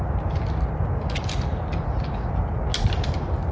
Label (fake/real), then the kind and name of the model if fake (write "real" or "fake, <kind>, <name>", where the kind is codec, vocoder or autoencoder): real